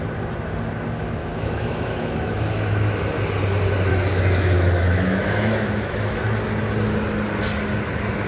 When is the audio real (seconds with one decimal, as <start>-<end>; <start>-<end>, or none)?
0.0-1.2; 3.0-3.9; 6.2-8.3